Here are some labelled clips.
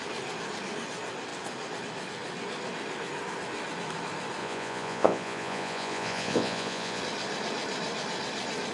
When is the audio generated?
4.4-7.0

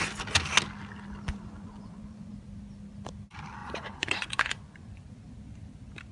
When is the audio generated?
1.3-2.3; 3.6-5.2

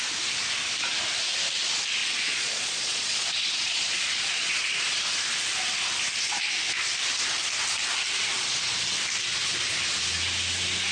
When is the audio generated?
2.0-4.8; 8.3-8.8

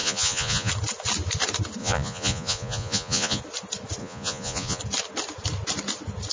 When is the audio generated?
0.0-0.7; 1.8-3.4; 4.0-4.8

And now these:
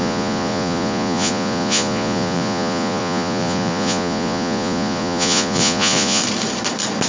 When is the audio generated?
0.0-6.2

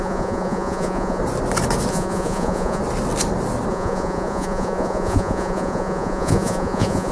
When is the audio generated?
0.0-1.2; 1.9-2.8; 3.7-7.1

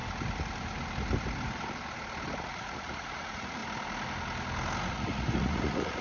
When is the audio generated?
2.4-3.6; 4.9-6.0

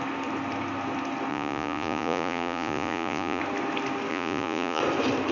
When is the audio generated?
1.3-3.4; 4.1-4.8